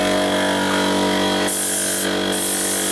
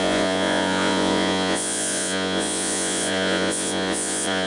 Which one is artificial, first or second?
second